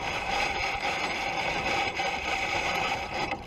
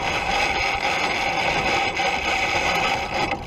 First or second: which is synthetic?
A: first